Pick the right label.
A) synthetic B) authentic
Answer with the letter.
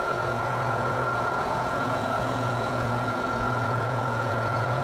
A